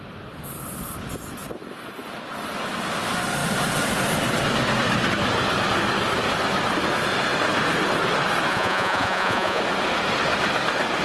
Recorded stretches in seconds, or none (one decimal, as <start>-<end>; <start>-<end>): 0.0-8.5; 9.6-11.0